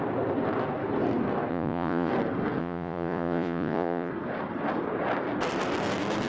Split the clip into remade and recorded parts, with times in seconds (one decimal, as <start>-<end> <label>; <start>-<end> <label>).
0.0-1.5 recorded; 1.5-2.1 remade; 2.1-2.6 recorded; 2.6-4.1 remade; 4.1-6.3 recorded